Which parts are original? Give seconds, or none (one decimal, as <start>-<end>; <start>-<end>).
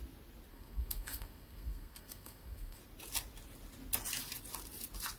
0.0-0.5; 2.8-5.2